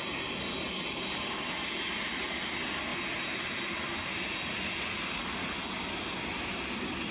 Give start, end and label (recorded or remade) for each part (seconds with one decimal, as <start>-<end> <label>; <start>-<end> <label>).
0.0-7.1 recorded